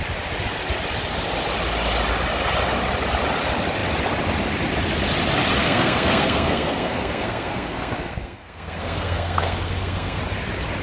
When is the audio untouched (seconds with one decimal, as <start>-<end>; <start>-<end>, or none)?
0.0-5.6; 10.2-10.8

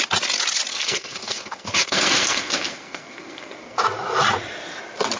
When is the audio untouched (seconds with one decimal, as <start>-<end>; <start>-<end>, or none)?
0.0-0.7; 3.8-5.2

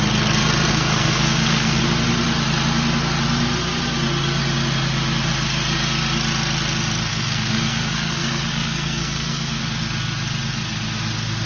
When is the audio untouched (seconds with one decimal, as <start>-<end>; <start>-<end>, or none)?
0.0-0.7; 1.8-7.1; 9.6-11.5

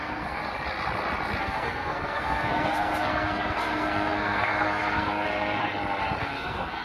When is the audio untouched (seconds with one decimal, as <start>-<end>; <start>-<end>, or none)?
0.4-1.4; 5.6-6.2

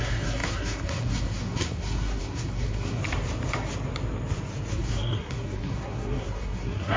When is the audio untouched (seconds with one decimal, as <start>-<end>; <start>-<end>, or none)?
3.0-4.7

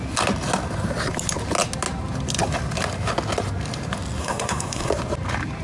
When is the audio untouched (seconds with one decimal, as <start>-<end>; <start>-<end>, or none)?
0.0-4.2; 4.9-5.6

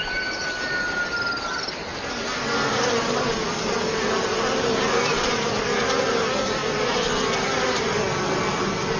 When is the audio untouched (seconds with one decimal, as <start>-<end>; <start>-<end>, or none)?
0.0-9.0